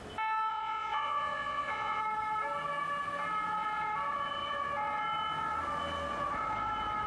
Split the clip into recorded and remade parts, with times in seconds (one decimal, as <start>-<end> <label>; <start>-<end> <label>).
0.0-0.5 recorded; 0.5-2.0 remade; 2.0-7.1 recorded

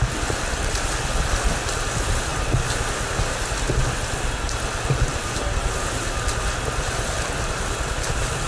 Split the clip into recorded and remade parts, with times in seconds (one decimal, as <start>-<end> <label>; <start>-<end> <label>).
0.0-8.5 recorded

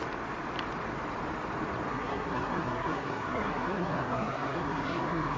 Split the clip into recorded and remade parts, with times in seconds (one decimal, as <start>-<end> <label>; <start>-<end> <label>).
0.0-1.9 recorded; 1.9-5.4 remade

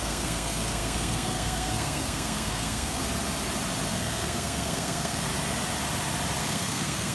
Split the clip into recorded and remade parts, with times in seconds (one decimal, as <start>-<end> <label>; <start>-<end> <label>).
0.0-3.0 remade; 3.0-3.9 recorded; 3.9-5.3 remade; 5.3-6.4 recorded; 6.4-7.1 remade

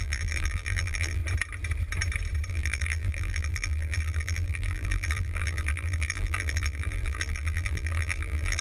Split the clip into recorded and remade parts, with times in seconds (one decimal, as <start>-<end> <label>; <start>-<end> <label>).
0.0-1.2 remade; 1.2-2.5 recorded; 2.5-8.6 remade